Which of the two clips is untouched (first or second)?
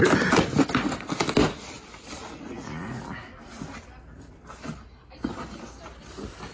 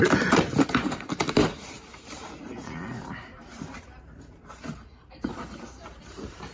first